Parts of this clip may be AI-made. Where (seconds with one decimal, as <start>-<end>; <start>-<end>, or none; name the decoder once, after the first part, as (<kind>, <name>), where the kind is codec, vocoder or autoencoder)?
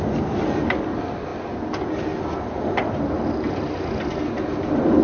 none